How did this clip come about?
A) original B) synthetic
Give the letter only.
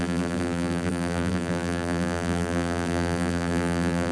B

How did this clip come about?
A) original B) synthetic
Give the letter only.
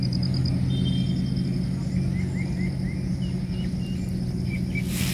A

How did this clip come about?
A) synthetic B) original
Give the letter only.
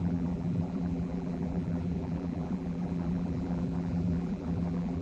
A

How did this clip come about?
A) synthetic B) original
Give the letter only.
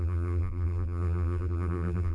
A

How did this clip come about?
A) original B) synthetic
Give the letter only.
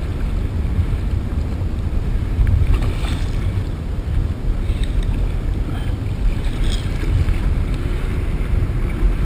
A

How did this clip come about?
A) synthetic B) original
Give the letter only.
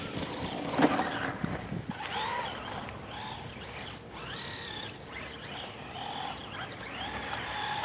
A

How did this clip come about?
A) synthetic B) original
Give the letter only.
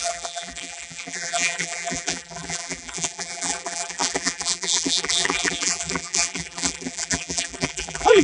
A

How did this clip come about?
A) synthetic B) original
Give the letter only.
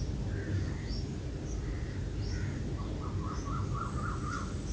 A